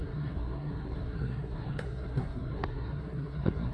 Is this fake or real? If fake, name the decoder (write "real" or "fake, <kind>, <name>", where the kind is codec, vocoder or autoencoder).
fake, codec, SNAC